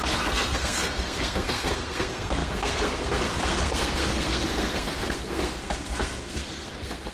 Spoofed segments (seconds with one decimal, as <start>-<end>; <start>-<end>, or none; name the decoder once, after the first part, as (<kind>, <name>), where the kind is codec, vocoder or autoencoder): 0.0-7.1 (codec, SNAC)